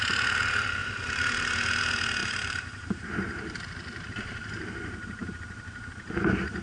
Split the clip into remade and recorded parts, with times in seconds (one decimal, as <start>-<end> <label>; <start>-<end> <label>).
0.0-0.8 recorded; 0.8-1.5 remade; 1.5-2.2 recorded; 2.2-3.0 remade; 3.0-3.9 recorded; 3.9-5.4 remade; 5.4-6.6 recorded